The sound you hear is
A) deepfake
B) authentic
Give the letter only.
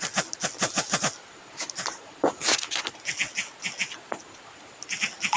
B